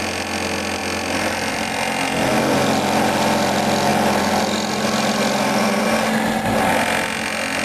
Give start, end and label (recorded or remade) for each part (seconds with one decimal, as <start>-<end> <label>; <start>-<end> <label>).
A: 0.0-7.6 recorded